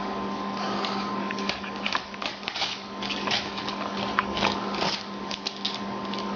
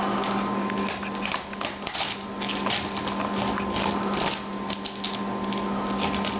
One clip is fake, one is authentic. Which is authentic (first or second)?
second